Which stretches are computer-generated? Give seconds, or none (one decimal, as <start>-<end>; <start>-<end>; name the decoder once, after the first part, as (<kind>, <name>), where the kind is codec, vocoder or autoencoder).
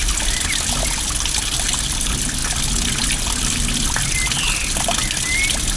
none